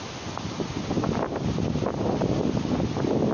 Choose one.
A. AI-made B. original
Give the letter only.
B